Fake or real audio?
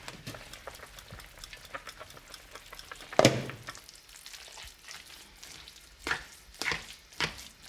real